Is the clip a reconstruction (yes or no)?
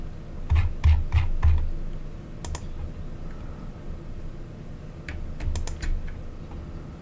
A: no